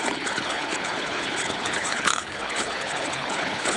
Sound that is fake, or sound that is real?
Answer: fake